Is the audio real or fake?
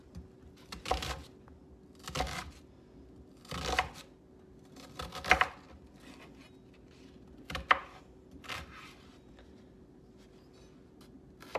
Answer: real